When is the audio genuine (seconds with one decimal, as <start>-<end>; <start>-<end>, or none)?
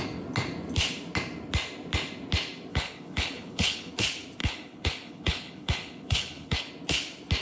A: 0.0-2.7; 3.9-4.4; 6.7-7.4